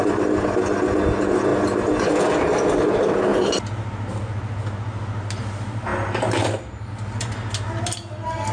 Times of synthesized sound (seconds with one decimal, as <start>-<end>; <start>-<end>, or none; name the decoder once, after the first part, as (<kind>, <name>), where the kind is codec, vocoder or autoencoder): none